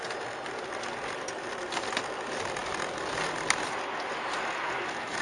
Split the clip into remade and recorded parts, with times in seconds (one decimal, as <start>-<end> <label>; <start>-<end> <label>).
0.0-5.2 recorded